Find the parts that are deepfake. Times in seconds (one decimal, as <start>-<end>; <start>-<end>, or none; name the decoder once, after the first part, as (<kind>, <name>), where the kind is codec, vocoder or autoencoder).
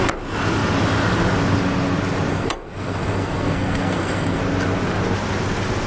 2.3-4.4 (codec, SNAC)